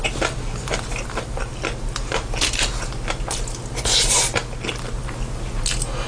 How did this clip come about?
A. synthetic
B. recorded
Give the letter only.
B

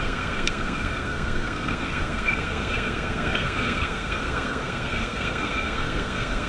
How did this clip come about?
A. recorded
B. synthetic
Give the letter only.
B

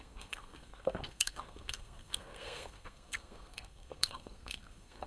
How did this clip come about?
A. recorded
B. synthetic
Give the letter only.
B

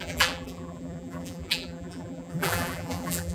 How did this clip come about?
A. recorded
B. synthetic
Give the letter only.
B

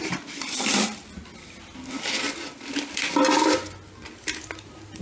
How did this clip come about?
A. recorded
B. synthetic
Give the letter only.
A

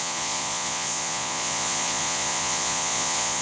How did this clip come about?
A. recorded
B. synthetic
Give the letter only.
B